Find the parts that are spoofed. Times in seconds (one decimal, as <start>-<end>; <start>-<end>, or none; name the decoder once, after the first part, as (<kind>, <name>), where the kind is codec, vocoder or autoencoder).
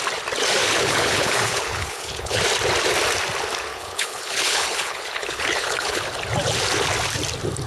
0.6-2.4 (codec, HILCodec); 3.7-6.2